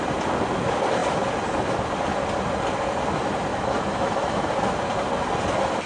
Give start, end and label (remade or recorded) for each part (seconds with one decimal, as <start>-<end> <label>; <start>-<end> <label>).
0.0-3.5 recorded; 3.5-4.5 remade; 4.5-5.9 recorded